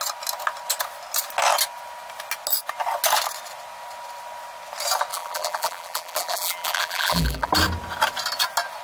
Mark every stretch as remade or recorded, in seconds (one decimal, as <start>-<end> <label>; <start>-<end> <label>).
0.0-5.1 recorded; 5.1-7.5 remade; 7.5-8.8 recorded